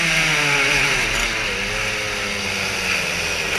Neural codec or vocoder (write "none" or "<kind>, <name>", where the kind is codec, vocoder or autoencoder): none